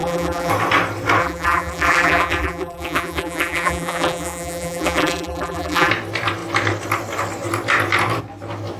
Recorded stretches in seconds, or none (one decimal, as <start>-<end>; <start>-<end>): 0.5-1.2; 5.9-8.8